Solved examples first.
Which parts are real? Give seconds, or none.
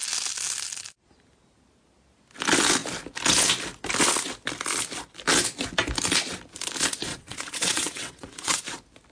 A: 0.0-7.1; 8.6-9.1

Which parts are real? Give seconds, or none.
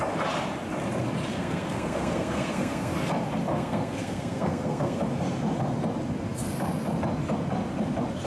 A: 0.0-1.3; 2.9-3.5; 5.0-8.3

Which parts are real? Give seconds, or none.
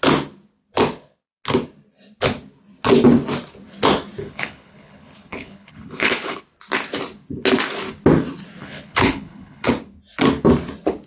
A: 0.0-4.2; 6.4-8.6; 9.7-11.1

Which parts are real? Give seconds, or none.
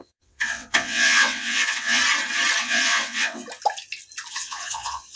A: 2.0-2.6; 3.4-4.3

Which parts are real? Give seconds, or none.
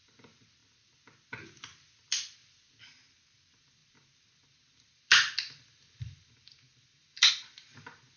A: 0.0-8.2